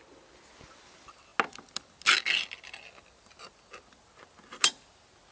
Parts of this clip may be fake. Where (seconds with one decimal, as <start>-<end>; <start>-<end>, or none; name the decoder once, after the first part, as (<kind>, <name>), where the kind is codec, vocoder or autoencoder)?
none

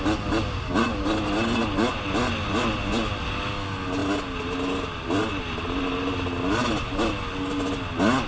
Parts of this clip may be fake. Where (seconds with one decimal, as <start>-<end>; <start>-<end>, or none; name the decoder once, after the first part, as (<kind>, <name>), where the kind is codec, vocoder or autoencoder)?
none

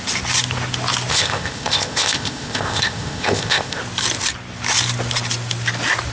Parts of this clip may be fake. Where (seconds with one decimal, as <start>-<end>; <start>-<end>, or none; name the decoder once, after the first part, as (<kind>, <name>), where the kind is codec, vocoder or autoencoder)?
1.1-3.8 (codec, ZipCodec)

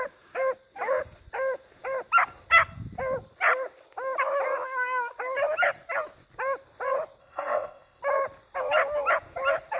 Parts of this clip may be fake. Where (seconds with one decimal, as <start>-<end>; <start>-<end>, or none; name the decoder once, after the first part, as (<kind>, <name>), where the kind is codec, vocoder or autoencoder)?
7.2-8.0 (codec, ZipCodec)

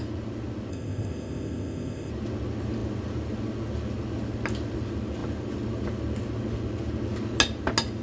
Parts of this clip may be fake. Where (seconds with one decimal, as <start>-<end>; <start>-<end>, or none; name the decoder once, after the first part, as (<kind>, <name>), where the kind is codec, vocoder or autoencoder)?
0.7-2.1 (codec, ZipCodec)

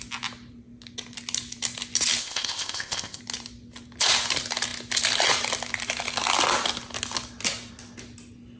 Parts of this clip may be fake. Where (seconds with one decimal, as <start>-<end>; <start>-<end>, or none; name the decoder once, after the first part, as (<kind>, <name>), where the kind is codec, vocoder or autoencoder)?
2.2-3.2 (codec, ZipCodec)

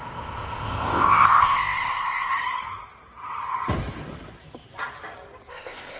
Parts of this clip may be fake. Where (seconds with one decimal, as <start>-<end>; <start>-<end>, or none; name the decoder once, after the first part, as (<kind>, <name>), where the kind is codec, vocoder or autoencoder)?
0.0-2.3 (codec, ZipCodec); 5.5-6.0